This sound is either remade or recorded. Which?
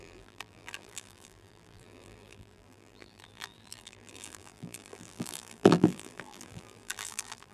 remade